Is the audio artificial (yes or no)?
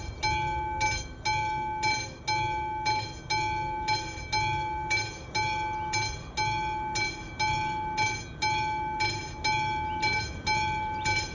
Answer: no